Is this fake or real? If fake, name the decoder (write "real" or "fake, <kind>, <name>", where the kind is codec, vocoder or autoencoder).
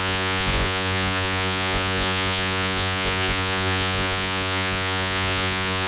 fake, vocoder, Vocos